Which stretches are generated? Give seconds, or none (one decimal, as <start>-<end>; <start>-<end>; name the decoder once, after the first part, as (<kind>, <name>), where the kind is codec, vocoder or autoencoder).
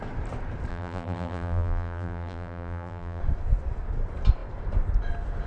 0.7-3.2 (vocoder, BigVGAN v2)